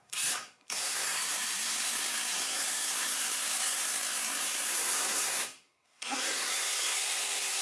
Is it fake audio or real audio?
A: fake